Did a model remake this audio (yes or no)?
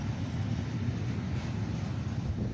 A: no